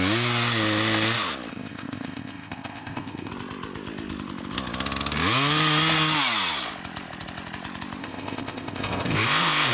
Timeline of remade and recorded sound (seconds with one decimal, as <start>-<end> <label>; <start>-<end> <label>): 0.0-1.5 recorded; 1.5-3.3 remade; 3.3-8.0 recorded; 8.0-9.7 remade

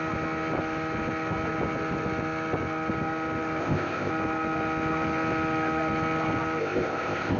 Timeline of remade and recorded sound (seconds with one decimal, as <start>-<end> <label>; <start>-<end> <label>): 0.0-3.6 recorded; 3.6-4.1 remade; 4.1-6.6 recorded; 6.6-7.4 remade

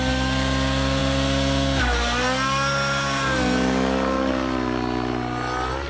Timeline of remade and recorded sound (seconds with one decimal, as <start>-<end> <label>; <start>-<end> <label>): 0.0-5.9 recorded

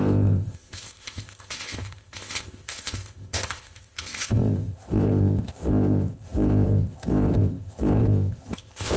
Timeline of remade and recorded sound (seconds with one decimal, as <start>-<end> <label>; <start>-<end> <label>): 0.0-9.0 remade